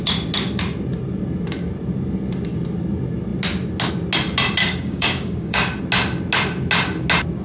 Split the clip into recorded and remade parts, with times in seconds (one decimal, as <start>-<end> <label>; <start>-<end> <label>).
0.0-4.6 recorded; 4.6-5.8 remade; 5.8-7.4 recorded